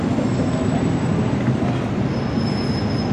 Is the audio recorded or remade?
recorded